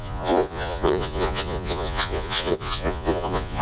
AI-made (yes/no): yes